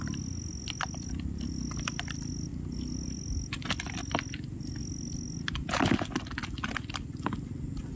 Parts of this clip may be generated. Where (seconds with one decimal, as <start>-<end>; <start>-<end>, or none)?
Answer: none